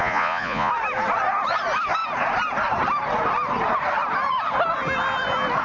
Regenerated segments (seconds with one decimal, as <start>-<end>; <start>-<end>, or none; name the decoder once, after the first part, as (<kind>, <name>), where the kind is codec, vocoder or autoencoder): 0.0-0.7 (vocoder, Vocos)